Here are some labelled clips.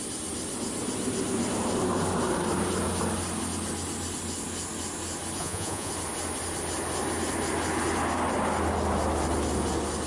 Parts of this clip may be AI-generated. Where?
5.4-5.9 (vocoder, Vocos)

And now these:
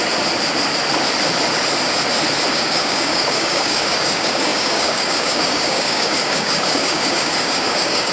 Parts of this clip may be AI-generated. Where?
2.5-8.1 (codec, DAC)

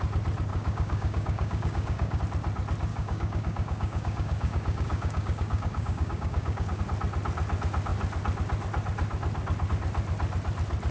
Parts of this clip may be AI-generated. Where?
0.5-2.2 (codec, DAC); 2.9-6.8

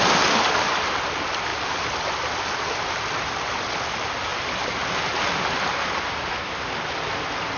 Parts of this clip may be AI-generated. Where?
none

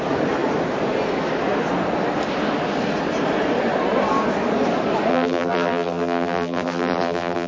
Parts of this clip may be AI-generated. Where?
5.1-7.5 (vocoder, BigVGAN v2)

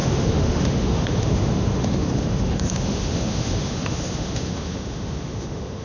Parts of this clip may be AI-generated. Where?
0.0-5.8 (autoencoder, DAC-VAE)

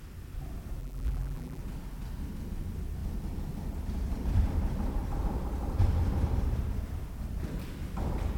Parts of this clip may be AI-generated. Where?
0.8-1.6 (vocoder, BigVGAN v2)